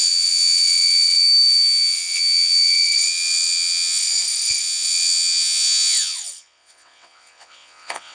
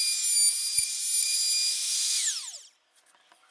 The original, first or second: second